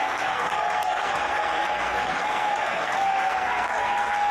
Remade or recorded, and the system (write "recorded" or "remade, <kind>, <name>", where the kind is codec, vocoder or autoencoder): remade, codec, SNAC